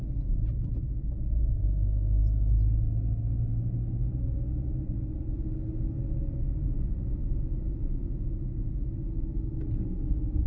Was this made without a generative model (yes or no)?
yes